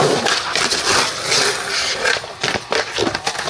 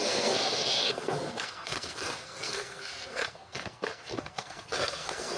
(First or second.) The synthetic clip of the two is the second